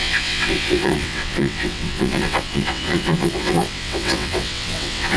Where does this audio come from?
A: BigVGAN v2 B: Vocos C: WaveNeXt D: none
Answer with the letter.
C